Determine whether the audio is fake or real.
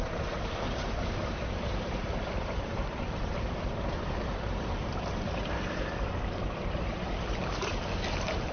fake